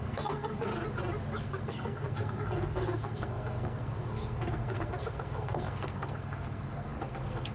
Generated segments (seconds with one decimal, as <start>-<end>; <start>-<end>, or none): 0.0-0.7; 1.4-7.5